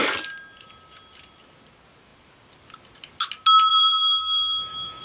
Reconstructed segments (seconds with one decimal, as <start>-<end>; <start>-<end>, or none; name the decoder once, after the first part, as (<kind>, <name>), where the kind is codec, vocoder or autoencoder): 3.7-5.0 (autoencoder, DAC-VAE)